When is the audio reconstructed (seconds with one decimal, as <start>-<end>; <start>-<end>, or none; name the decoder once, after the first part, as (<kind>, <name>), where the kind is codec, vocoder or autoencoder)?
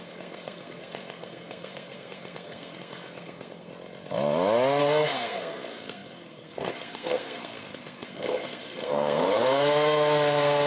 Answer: 0.0-3.7 (codec, SNAC); 4.8-10.7